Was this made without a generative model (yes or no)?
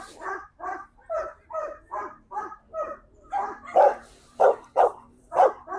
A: no